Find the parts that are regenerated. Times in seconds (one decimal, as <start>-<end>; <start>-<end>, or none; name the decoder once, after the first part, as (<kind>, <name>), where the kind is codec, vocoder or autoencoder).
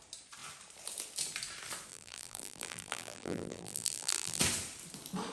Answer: 1.9-4.4 (vocoder, BigVGAN v2)